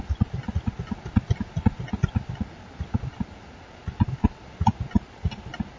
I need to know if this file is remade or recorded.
recorded